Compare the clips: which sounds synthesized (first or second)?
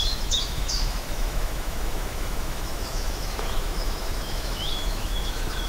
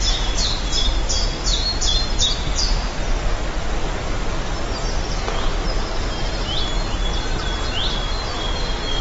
first